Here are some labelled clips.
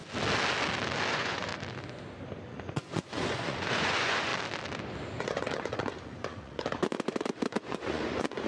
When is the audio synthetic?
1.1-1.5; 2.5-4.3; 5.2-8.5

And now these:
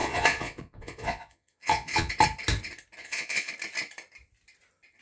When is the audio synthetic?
0.0-2.1; 3.0-3.5